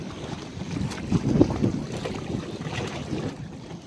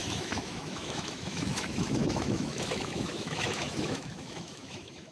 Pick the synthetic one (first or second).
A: second